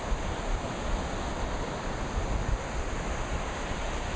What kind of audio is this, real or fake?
real